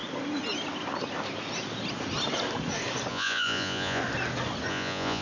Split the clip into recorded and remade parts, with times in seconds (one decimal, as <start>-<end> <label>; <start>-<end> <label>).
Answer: 0.0-3.1 recorded; 3.1-4.0 remade; 4.0-4.7 recorded; 4.7-5.2 remade